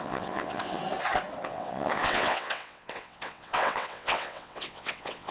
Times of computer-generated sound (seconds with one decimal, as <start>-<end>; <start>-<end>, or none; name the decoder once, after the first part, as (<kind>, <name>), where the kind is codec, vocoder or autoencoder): 0.0-0.8 (vocoder, WaveNeXt); 1.4-5.3